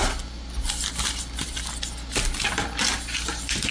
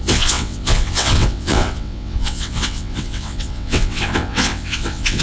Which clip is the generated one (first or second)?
second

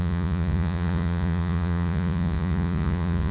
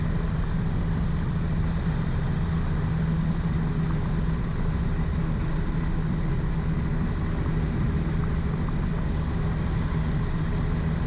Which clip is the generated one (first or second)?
first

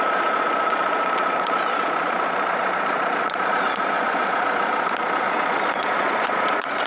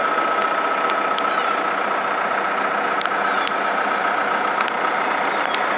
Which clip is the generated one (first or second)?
first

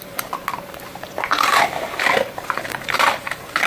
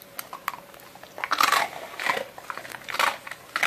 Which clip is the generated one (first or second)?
first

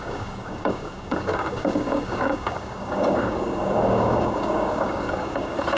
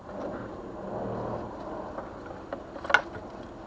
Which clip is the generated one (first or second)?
first